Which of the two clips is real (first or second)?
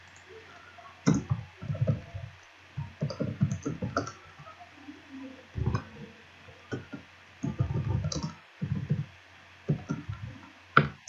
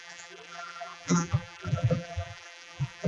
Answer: first